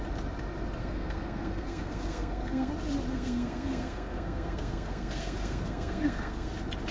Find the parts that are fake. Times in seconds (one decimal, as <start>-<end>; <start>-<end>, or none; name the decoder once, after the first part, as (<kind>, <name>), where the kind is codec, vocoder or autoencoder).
0.8-2.7 (codec, SNAC); 3.1-6.5